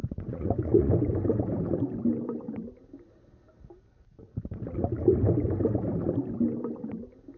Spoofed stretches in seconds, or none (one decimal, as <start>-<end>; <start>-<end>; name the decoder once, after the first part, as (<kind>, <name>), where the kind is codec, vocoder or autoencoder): 0.0-0.9 (vocoder, Vocos)